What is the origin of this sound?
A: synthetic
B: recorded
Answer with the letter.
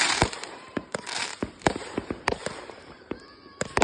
A